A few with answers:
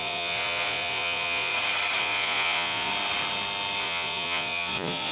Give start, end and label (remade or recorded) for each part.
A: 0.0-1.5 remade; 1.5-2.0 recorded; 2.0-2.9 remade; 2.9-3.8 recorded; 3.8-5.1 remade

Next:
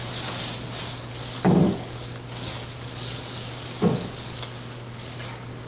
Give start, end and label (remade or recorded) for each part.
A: 0.0-0.8 recorded; 0.8-5.7 remade

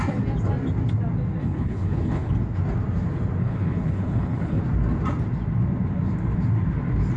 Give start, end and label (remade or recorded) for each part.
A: 0.0-1.4 recorded; 1.4-2.3 remade; 2.3-3.4 recorded; 3.4-4.6 remade; 4.6-7.2 recorded